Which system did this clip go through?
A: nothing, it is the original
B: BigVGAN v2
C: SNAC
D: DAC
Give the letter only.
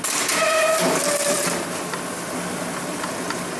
A